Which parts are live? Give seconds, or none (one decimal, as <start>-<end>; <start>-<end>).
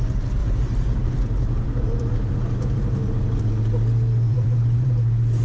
0.0-0.4; 3.4-4.3; 4.9-5.4